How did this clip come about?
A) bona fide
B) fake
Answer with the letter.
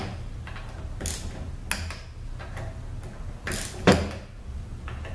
A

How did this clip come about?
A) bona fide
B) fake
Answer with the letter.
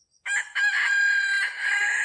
A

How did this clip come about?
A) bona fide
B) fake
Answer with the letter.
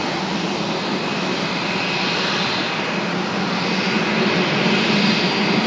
A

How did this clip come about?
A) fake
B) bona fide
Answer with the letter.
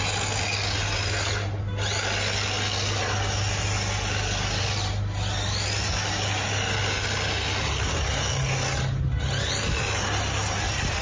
B